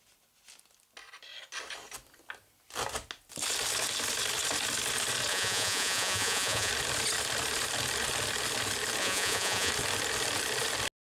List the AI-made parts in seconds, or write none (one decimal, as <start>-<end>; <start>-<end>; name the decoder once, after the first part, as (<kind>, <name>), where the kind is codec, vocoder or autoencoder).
5.3-6.7 (vocoder, Vocos); 9.0-9.7